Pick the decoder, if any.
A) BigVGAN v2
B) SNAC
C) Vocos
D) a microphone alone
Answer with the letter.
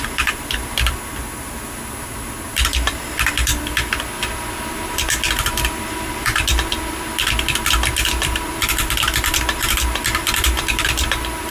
A